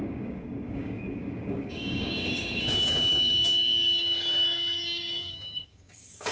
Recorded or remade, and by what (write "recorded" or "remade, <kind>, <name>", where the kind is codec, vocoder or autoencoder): remade, codec, DAC